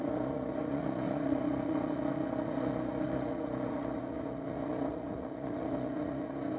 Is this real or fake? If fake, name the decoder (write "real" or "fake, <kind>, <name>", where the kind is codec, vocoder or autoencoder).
fake, vocoder, Vocos